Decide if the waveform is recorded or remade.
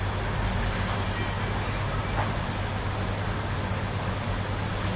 recorded